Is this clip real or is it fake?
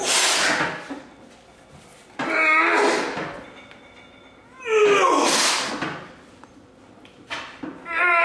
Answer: real